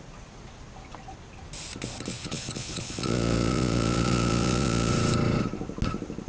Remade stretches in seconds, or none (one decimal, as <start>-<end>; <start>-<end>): 2.1-4.9